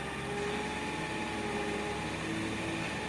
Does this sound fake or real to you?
real